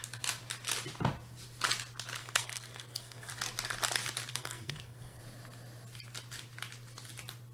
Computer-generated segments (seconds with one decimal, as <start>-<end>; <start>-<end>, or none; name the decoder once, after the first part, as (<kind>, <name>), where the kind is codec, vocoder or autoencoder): 2.2-3.3 (codec, SNAC); 4.3-5.2